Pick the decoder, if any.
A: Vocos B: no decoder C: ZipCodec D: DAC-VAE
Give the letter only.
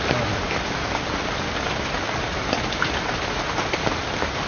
B